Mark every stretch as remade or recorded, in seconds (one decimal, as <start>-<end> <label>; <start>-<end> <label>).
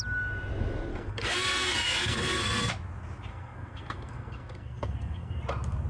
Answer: 0.0-0.9 recorded; 0.9-2.7 remade; 2.7-3.3 recorded; 3.3-5.4 remade; 5.4-5.9 recorded